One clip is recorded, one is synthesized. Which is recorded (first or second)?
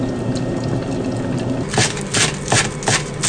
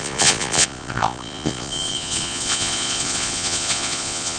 first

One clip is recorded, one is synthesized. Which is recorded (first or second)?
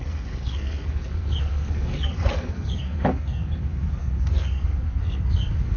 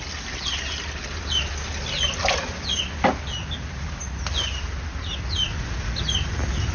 second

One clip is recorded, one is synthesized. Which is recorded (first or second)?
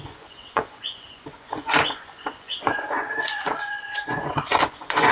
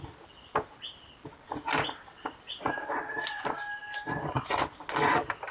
second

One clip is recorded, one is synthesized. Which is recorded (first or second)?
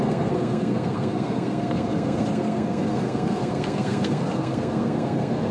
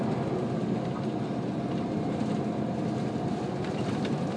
second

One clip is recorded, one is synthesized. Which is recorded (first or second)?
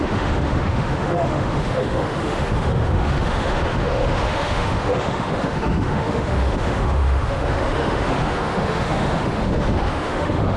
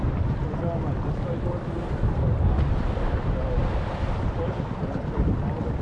second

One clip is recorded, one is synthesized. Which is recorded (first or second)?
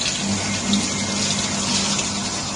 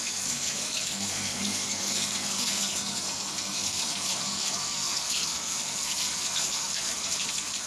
first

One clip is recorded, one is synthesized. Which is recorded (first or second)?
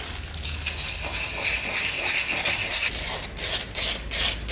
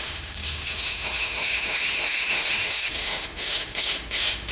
first